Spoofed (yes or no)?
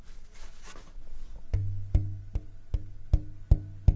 no